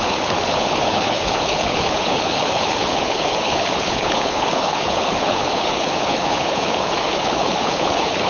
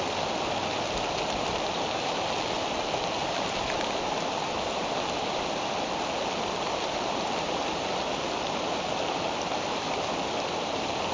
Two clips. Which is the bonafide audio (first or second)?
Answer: second